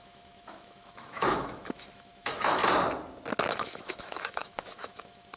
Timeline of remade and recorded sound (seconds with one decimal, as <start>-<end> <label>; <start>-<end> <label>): 0.0-2.6 remade; 2.6-3.5 recorded; 3.5-5.4 remade

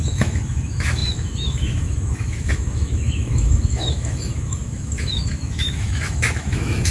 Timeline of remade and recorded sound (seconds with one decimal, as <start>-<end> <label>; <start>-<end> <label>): 0.0-6.9 remade

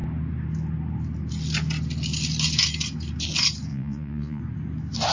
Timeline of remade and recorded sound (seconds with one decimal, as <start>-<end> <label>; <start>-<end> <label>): 0.0-3.7 recorded; 3.7-4.4 remade; 4.4-5.1 recorded

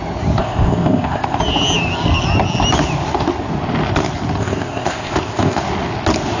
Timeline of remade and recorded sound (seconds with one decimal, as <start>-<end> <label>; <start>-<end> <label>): 0.0-0.4 recorded; 0.4-1.4 remade; 1.4-4.4 recorded; 4.4-5.6 remade; 5.6-6.4 recorded